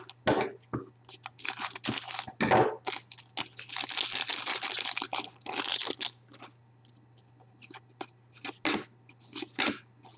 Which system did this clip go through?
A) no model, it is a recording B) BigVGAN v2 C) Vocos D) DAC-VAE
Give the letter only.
A